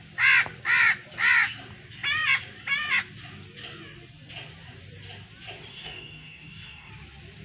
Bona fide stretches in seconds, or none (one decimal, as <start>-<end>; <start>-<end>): 0.0-5.7; 6.9-7.4